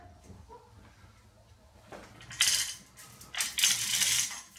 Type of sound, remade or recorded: recorded